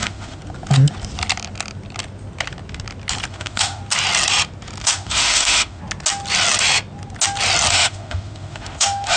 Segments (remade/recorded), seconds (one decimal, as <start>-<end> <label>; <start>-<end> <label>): 0.0-0.4 remade; 0.4-3.3 recorded; 3.3-3.8 remade; 3.8-4.8 recorded; 4.8-5.8 remade; 5.8-7.7 recorded; 7.7-9.2 remade

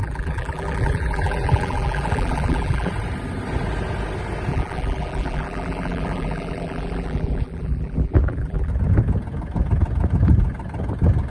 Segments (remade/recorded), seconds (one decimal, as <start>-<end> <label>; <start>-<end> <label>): 0.0-2.9 remade; 2.9-4.5 recorded; 4.5-8.7 remade; 8.7-11.3 recorded